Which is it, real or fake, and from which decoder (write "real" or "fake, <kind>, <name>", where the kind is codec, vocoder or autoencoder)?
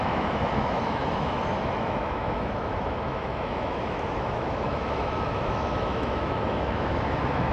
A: fake, autoencoder, DAC-VAE